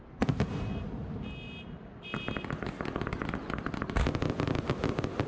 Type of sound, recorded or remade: recorded